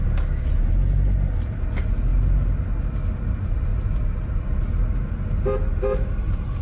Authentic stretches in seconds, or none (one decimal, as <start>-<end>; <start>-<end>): 0.0-6.6